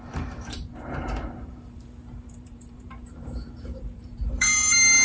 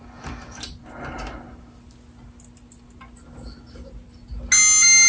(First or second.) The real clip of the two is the second